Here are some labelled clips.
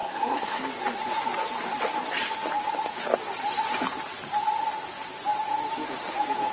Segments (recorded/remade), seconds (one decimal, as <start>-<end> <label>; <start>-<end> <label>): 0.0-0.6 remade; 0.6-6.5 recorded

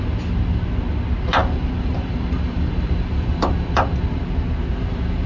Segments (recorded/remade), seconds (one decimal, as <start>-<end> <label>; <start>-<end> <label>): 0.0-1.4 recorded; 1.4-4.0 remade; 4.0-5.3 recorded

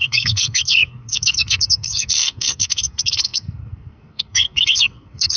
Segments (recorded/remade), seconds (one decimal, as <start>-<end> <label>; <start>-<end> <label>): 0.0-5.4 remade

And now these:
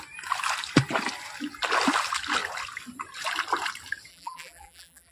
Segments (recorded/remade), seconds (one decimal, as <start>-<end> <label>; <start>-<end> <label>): 0.0-4.1 recorded; 4.1-5.1 remade

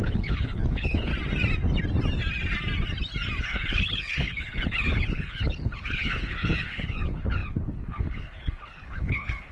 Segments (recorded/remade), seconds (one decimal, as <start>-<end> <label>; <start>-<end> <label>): 0.0-1.1 remade; 1.1-3.4 recorded; 3.4-9.5 remade